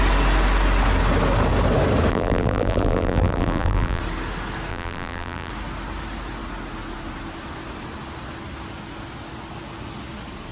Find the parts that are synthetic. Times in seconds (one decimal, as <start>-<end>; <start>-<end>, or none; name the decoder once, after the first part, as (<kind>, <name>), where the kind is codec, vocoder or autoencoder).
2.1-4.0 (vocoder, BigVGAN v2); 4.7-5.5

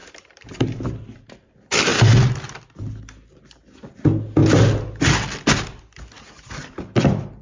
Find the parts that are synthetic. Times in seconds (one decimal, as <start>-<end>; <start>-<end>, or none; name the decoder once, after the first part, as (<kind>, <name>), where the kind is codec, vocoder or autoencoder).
0.0-1.5 (vocoder, BigVGAN v2)

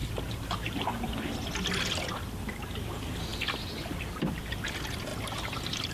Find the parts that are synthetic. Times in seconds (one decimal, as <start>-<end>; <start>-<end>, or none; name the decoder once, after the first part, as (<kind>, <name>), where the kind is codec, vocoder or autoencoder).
0.0-1.2 (vocoder, BigVGAN v2)

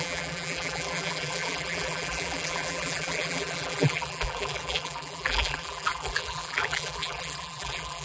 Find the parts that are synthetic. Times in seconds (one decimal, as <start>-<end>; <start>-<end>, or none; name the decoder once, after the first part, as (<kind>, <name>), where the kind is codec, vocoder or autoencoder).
0.0-8.0 (vocoder, BigVGAN v2)

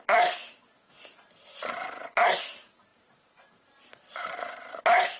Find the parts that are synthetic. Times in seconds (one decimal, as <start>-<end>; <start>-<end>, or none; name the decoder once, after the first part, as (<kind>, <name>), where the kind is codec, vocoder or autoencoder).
2.9-4.8 (vocoder, BigVGAN v2)